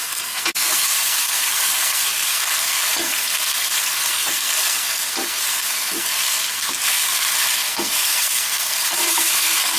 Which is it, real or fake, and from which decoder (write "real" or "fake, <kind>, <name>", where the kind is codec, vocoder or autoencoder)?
fake, codec, SNAC